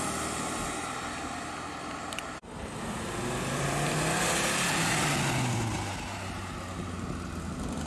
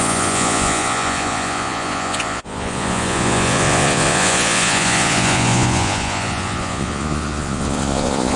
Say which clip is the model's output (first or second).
second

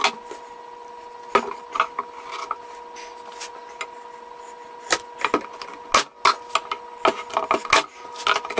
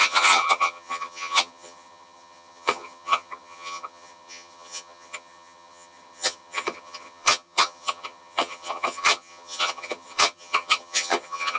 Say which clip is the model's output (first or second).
second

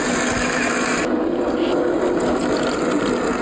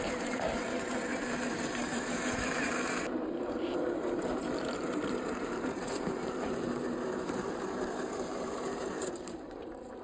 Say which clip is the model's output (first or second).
second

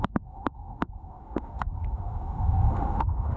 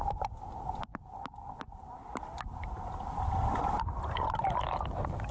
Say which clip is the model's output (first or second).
first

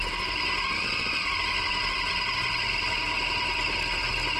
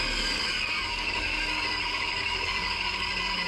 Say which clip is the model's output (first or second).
second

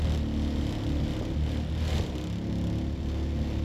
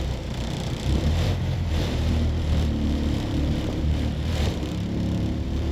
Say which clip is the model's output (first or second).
second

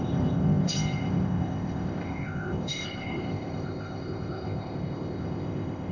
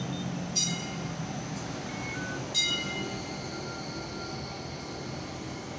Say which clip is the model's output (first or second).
first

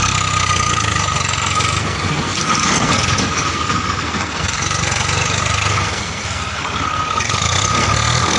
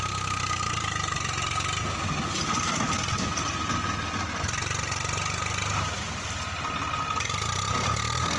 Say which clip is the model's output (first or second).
first